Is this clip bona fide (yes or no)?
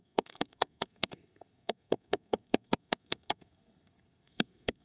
no